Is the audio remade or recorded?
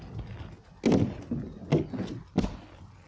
recorded